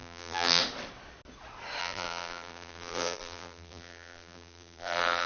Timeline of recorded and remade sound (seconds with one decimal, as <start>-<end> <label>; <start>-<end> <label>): 0.0-0.6 remade; 0.6-1.8 recorded; 1.8-5.3 remade